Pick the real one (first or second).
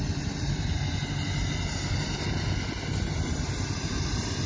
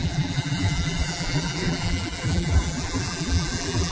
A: first